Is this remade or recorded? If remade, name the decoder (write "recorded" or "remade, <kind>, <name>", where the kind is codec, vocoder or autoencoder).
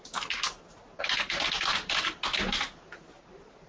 recorded